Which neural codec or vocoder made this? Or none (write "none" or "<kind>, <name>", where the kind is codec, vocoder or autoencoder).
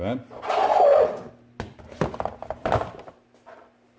none